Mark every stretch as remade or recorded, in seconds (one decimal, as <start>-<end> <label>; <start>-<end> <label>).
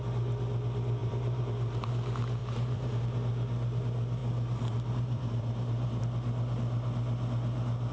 0.0-1.0 recorded; 1.0-1.9 remade; 1.9-2.4 recorded; 2.4-3.0 remade; 3.0-4.2 recorded; 4.2-6.0 remade; 6.0-7.9 recorded